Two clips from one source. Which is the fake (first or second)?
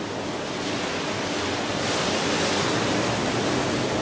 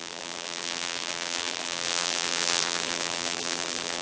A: second